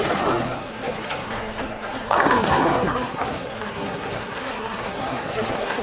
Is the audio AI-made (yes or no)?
yes